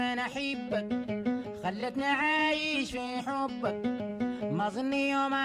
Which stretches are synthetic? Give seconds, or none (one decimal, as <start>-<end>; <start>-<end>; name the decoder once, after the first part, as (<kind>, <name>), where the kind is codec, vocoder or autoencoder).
0.6-1.4 (vocoder, BigVGAN v2); 1.8-3.2

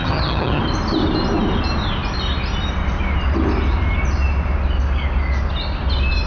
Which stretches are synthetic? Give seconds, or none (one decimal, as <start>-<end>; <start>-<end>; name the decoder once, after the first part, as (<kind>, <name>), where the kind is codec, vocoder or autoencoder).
0.0-0.6 (vocoder, HiFi-GAN)